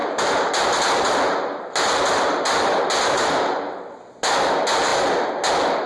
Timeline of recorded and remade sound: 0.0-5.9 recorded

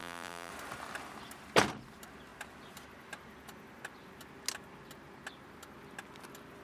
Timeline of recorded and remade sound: 0.0-0.5 remade; 0.5-6.6 recorded